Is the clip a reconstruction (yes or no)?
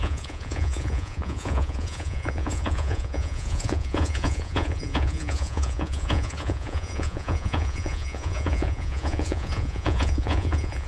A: yes